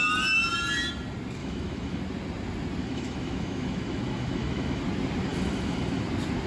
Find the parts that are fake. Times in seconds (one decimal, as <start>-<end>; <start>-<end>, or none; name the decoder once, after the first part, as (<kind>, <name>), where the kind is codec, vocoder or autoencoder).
1.4-2.0 (autoencoder, DAC-VAE); 2.8-4.8; 5.3-6.0